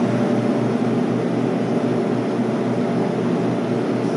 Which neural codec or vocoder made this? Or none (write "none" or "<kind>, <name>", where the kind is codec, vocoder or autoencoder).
none